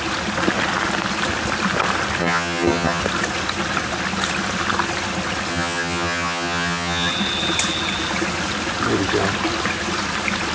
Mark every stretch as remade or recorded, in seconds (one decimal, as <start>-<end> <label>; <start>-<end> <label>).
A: 0.0-2.2 recorded; 2.2-3.0 remade; 3.0-5.5 recorded; 5.5-7.1 remade; 7.1-10.5 recorded